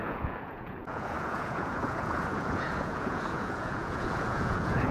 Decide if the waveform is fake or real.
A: fake